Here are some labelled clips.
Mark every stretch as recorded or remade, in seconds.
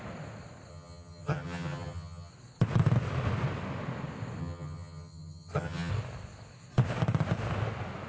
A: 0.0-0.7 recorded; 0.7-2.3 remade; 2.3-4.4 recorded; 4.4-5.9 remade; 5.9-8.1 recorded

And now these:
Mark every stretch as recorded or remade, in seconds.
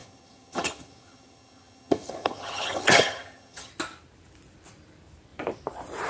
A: 0.0-3.7 remade; 3.7-6.1 recorded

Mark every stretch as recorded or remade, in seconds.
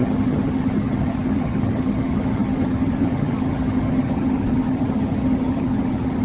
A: 0.0-6.2 remade